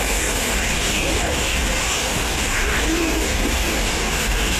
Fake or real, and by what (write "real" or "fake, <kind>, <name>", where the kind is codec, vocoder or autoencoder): fake, codec, DAC